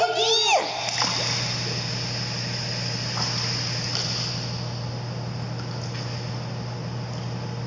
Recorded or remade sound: recorded